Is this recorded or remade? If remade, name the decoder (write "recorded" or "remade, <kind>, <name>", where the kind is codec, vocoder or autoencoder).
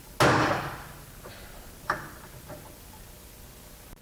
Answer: recorded